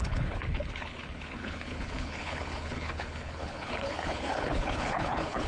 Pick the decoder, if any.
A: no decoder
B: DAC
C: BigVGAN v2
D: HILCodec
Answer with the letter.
D